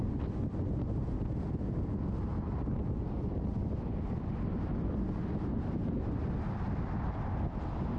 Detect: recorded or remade recorded